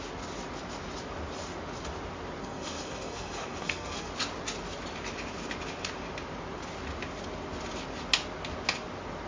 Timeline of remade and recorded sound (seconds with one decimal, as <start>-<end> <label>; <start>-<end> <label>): 0.0-2.4 recorded; 2.4-4.1 remade; 4.1-9.3 recorded